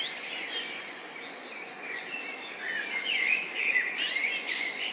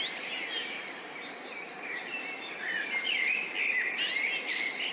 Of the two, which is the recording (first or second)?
second